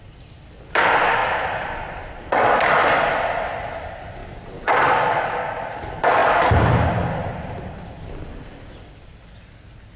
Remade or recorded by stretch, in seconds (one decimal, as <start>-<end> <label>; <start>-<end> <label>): 0.0-1.2 recorded; 1.2-2.0 remade; 2.0-4.2 recorded; 4.2-4.9 remade; 4.9-10.0 recorded